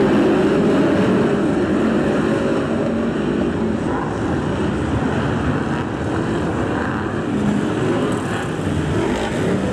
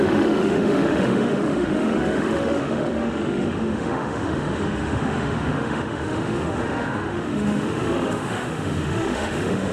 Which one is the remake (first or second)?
second